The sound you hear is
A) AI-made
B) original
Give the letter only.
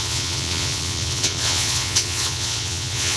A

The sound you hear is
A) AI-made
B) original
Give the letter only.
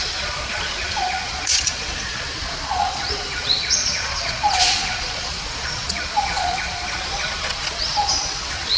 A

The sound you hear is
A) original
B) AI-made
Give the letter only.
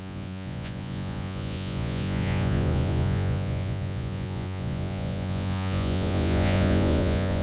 B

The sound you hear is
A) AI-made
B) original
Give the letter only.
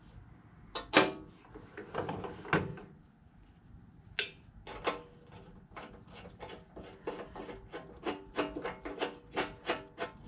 B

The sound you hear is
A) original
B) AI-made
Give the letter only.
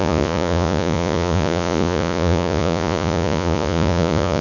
B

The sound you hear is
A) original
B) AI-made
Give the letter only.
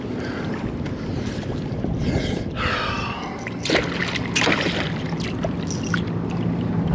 A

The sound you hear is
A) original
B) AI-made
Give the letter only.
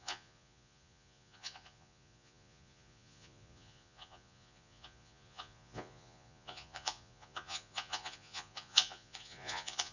B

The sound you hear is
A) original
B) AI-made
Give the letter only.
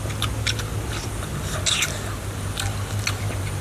A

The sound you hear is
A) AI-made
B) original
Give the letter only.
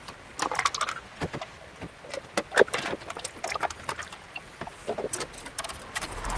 B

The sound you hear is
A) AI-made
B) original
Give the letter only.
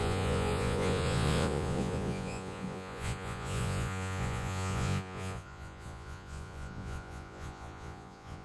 A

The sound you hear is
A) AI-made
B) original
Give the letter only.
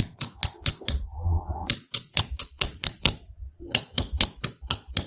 A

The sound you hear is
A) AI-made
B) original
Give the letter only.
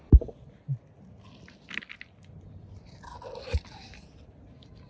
B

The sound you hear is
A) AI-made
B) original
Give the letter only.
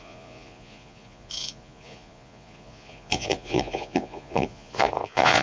A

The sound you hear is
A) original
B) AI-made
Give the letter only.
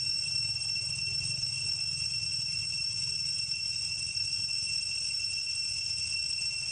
A